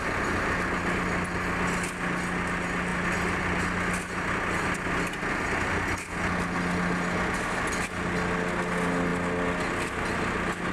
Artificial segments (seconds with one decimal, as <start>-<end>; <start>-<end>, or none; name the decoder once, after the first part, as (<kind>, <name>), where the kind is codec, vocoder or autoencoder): none